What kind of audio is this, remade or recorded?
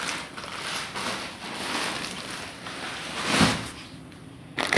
recorded